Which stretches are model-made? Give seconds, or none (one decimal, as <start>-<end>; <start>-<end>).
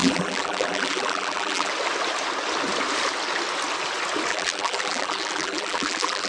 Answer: 0.0-1.7; 4.3-6.3